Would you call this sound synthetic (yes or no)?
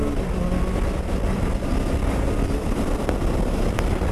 no